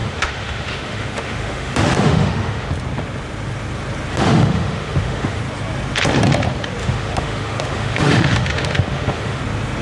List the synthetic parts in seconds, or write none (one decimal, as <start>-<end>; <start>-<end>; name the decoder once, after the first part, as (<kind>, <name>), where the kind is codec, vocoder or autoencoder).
0.0-2.7 (autoencoder, DAC-VAE); 4.1-5.4; 6.8-9.4